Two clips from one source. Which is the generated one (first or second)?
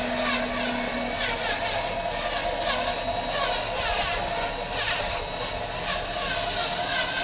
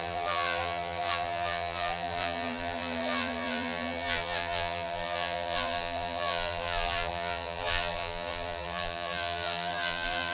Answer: second